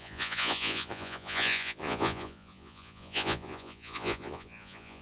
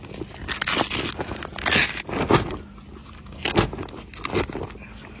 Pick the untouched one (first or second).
second